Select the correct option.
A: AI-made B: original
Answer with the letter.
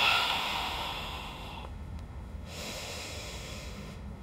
A